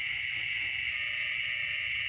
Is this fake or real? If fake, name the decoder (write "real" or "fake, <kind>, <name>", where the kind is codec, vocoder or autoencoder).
real